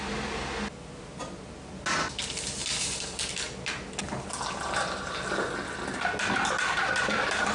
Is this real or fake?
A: real